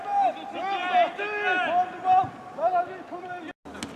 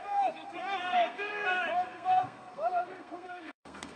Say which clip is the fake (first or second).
second